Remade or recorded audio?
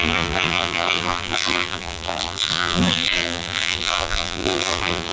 remade